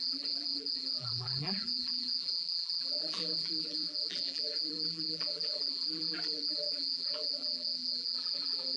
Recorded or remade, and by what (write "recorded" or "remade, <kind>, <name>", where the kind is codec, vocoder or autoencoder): remade, vocoder, BigVGAN v2